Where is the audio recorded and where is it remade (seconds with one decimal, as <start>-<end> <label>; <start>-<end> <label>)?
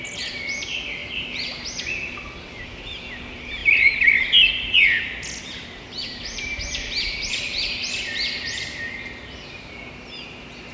0.0-1.0 recorded; 1.0-1.9 remade; 1.9-3.6 recorded; 3.6-4.1 remade; 4.1-5.4 recorded; 5.4-7.4 remade; 7.4-10.7 recorded